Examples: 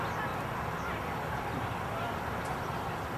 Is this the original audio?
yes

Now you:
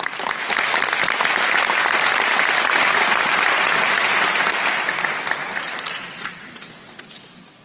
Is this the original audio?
yes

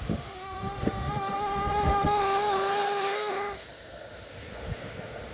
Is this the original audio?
no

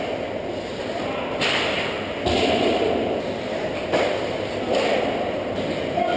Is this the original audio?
yes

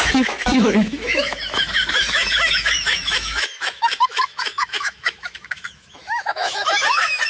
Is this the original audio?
no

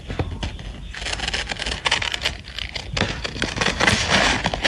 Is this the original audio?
yes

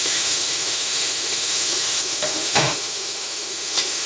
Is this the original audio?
no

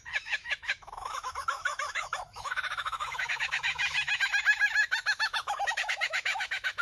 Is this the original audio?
no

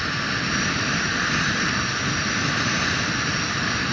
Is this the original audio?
yes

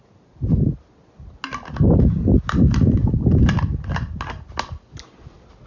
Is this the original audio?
yes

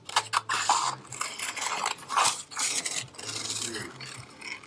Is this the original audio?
yes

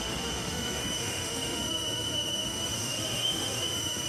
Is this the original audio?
no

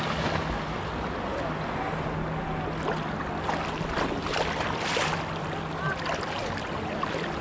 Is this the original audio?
yes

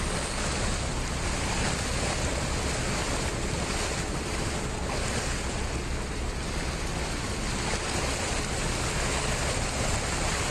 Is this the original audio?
yes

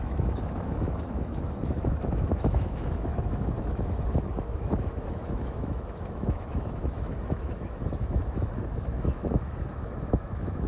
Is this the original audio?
no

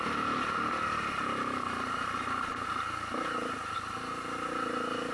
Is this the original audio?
yes